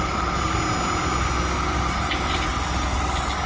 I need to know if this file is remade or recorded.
recorded